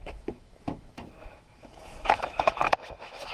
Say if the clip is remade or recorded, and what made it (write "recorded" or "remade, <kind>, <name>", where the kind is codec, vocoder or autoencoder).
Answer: remade, autoencoder, DAC-VAE